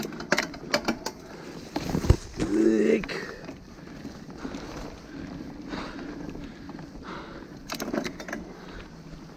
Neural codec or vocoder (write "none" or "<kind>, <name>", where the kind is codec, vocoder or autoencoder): none